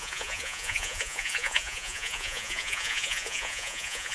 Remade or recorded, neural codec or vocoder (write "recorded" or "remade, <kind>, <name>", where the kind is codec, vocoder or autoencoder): remade, vocoder, Vocos